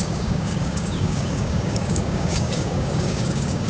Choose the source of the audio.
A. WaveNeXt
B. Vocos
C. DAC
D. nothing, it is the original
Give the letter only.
C